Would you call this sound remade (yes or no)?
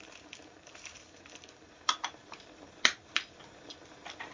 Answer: yes